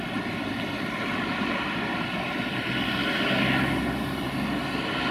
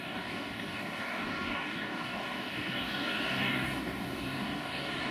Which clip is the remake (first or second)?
second